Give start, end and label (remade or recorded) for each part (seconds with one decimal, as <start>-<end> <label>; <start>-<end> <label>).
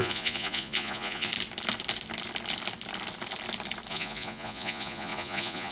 0.0-1.3 remade; 1.3-3.9 recorded; 3.9-5.7 remade